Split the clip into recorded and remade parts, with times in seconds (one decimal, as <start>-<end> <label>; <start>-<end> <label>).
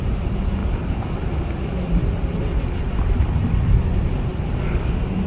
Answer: 0.0-5.3 recorded